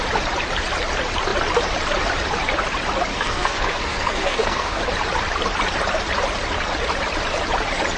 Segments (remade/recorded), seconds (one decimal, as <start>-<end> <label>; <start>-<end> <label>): 0.0-3.1 recorded; 3.1-4.8 remade; 4.8-8.0 recorded